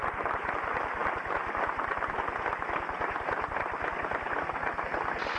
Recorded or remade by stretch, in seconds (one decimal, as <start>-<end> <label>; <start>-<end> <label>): 0.0-5.4 recorded